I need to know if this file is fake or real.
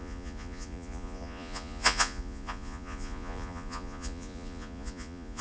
fake